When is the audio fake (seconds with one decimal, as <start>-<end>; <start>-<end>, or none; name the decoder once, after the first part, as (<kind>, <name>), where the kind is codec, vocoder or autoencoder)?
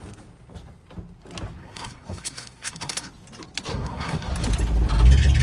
1.6-3.1 (codec, SNAC); 3.7-4.3